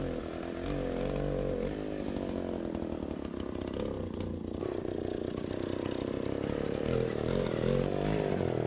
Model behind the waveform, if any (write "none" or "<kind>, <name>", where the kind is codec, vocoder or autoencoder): none